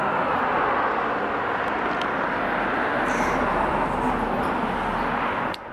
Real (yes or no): yes